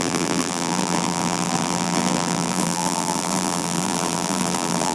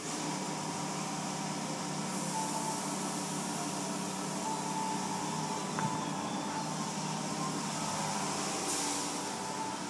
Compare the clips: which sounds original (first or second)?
second